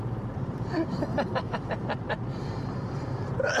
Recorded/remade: remade